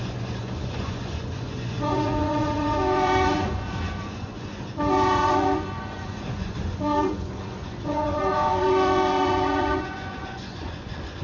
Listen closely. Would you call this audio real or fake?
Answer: fake